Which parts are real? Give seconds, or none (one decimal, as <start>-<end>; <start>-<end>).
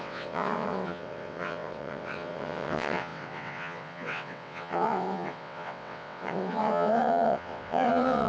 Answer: none